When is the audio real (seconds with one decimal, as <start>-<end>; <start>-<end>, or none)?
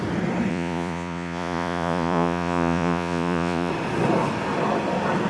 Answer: 0.0-0.5; 3.7-5.3